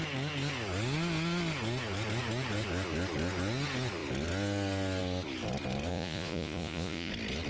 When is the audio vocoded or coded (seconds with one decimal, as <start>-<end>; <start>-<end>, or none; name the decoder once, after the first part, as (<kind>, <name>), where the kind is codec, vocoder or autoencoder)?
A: 5.9-7.1 (vocoder, Vocos)